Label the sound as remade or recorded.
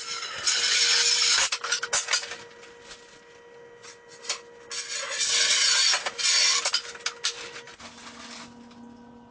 recorded